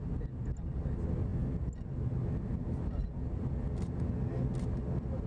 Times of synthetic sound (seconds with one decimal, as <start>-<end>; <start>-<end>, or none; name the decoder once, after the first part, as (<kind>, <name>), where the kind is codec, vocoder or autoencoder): none